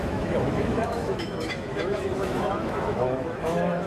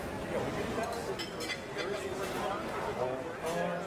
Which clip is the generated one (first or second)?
first